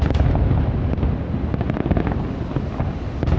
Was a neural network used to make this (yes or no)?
no